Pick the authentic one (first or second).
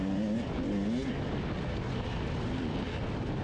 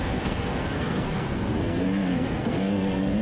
first